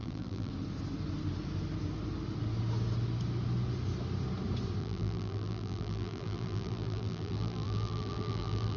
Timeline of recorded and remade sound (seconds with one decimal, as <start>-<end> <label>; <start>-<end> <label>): 0.0-0.5 remade; 0.5-4.8 recorded; 4.8-8.8 remade